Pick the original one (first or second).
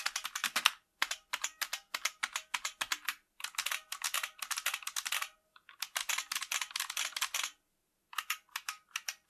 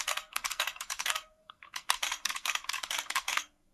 first